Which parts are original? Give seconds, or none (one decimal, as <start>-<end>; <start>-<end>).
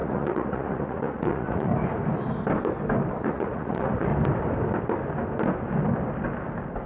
1.7-3.2; 4.1-6.9